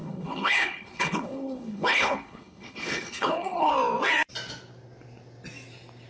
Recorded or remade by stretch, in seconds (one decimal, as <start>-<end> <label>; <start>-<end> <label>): 0.0-3.7 remade; 3.7-6.1 recorded